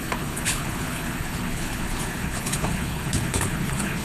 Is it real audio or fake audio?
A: fake